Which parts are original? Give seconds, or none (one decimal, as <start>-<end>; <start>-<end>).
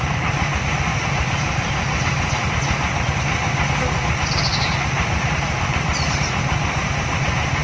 0.0-0.9; 1.7-4.5; 5.9-7.6